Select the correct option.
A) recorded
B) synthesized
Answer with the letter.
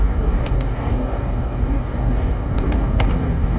B